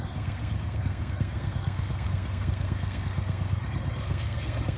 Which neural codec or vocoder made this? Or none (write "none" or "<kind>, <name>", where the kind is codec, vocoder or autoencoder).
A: codec, SNAC